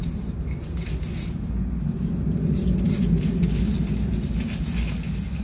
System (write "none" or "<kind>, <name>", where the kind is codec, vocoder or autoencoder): none